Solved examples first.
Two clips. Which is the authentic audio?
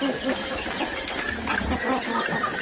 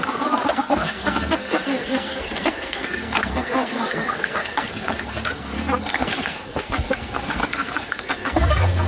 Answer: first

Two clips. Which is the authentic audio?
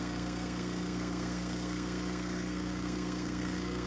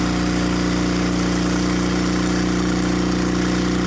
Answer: second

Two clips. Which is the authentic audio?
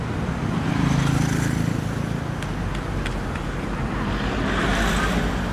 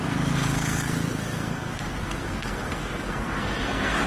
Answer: first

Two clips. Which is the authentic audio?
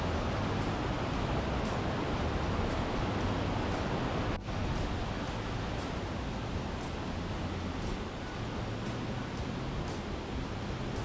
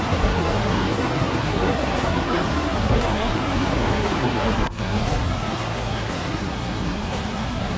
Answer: first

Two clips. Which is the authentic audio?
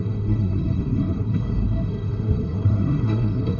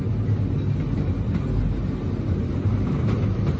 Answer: second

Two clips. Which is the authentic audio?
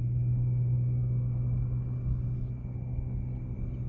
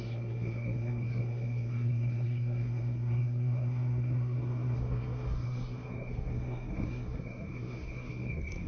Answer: first